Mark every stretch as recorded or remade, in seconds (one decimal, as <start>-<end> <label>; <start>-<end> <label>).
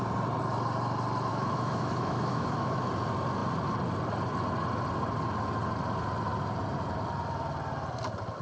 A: 0.0-1.3 recorded; 1.3-2.9 remade; 2.9-8.4 recorded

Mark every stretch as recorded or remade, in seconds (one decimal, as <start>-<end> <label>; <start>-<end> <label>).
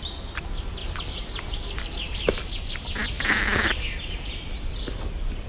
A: 0.0-5.5 recorded